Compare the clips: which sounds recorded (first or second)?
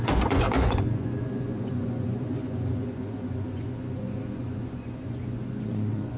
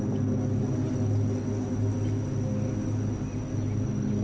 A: second